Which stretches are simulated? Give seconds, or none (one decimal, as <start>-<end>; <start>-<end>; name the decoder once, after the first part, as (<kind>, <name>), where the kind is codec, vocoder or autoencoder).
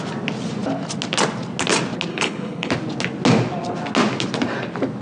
2.1-2.7 (codec, HILCodec)